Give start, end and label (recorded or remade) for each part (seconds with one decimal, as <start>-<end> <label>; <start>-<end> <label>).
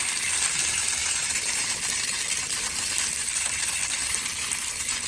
0.0-5.1 recorded